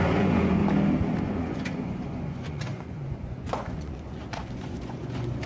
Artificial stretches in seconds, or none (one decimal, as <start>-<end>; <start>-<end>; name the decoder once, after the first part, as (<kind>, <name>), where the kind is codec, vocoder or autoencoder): 0.0-0.6 (vocoder, Vocos); 1.2-5.5

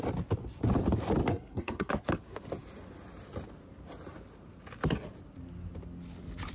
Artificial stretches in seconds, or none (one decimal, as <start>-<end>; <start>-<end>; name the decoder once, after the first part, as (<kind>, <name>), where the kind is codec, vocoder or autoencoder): 1.3-1.9 (codec, SNAC)

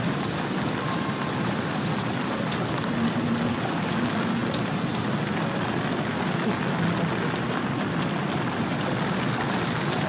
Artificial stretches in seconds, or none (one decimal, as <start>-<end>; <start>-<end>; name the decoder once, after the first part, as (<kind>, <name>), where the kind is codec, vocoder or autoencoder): 0.0-4.4 (vocoder, BigVGAN v2); 8.6-10.1

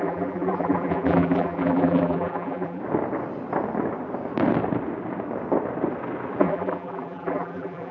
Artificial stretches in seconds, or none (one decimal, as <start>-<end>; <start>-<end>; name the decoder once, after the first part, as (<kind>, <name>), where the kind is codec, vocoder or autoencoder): 0.0-2.8 (vocoder, BigVGAN v2); 6.4-7.9

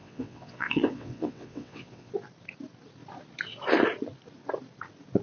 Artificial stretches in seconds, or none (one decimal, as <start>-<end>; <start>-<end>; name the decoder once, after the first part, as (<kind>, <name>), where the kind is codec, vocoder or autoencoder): 0.0-2.1 (vocoder, WaveNeXt)

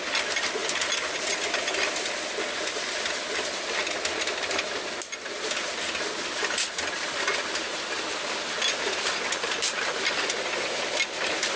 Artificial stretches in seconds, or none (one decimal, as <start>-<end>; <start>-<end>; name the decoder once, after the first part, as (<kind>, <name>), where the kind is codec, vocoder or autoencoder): none

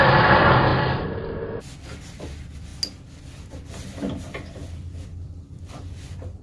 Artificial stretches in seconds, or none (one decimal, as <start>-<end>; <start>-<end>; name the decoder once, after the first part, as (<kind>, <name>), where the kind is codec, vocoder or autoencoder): 0.0-2.7 (vocoder, BigVGAN v2); 3.2-6.4